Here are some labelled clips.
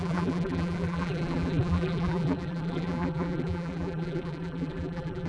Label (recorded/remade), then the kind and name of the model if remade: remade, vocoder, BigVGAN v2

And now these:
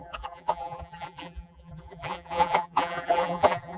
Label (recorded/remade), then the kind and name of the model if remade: remade, vocoder, BigVGAN v2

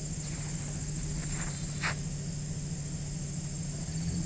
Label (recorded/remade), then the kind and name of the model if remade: recorded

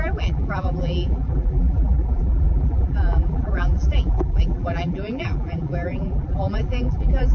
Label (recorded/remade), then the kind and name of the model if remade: remade, vocoder, BigVGAN v2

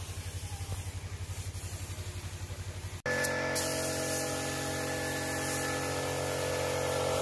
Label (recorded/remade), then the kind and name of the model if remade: recorded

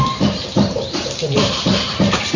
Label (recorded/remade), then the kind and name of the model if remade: remade, vocoder, BigVGAN v2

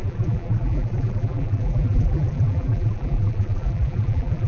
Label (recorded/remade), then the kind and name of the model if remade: remade, vocoder, BigVGAN v2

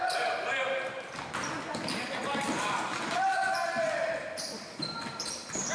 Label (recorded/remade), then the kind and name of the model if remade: remade, vocoder, BigVGAN v2